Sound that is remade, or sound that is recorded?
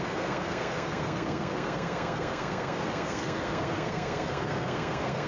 remade